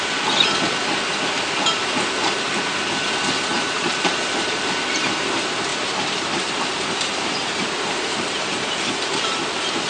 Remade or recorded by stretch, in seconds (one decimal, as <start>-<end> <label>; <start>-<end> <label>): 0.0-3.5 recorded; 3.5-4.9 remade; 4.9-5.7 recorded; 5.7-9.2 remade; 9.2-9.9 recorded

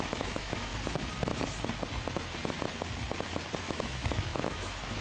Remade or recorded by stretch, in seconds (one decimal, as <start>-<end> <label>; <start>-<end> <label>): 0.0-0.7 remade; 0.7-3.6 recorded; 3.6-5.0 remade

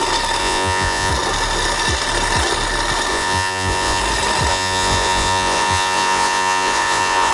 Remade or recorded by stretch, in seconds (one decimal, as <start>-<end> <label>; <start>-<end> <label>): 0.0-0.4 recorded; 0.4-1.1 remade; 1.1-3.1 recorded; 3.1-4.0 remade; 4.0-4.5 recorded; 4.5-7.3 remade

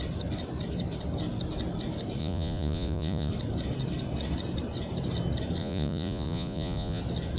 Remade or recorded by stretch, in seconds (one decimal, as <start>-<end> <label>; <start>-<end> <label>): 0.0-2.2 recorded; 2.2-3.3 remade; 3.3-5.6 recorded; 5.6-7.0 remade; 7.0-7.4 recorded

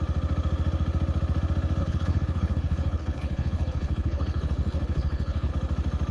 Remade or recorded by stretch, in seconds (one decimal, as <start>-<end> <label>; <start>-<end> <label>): 0.0-1.8 recorded; 1.8-5.5 remade; 5.5-6.1 recorded